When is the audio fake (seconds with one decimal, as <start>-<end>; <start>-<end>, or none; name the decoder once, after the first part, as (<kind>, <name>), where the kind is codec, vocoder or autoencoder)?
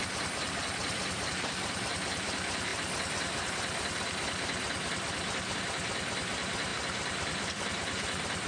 none